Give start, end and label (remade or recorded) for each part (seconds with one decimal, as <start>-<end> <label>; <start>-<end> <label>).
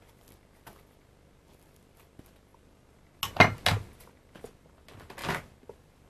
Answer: 0.0-6.1 recorded